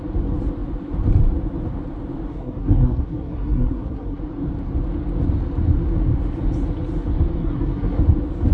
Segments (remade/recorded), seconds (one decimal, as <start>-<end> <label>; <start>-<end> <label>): 0.0-2.3 recorded; 2.3-4.2 remade; 4.2-7.4 recorded; 7.4-8.0 remade; 8.0-8.5 recorded